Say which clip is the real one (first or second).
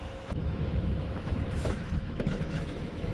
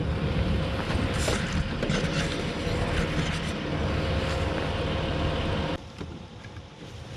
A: second